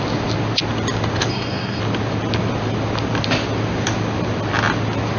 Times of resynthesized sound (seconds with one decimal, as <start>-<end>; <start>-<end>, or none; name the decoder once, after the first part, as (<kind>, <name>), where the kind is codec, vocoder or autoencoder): 1.3-1.8 (codec, SNAC)